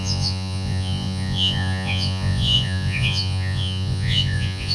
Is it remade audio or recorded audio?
remade